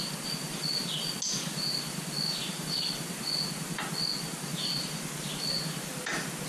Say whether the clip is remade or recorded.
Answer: recorded